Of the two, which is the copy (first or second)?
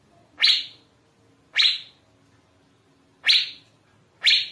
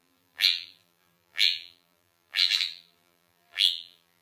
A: second